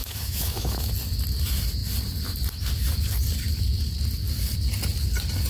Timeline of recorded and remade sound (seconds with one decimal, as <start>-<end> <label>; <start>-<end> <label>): 0.0-0.9 remade; 0.9-5.5 recorded